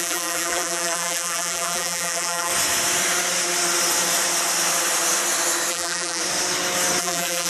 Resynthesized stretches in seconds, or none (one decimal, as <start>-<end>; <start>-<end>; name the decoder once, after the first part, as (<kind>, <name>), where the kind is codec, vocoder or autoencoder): 0.0-2.5 (vocoder, BigVGAN v2); 5.7-6.2; 7.0-7.5